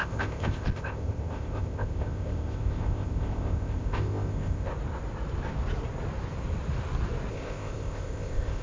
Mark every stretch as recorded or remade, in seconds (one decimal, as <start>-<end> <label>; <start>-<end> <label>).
0.0-4.7 remade; 4.7-7.3 recorded; 7.3-8.6 remade